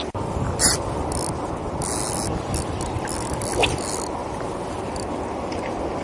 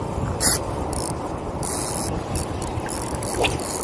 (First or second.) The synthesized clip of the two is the second